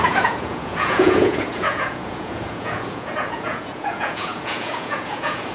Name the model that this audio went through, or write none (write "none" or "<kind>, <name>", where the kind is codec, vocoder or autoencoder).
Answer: vocoder, Vocos